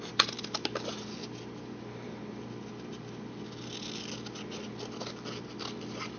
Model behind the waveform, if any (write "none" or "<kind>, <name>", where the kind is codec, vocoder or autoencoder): none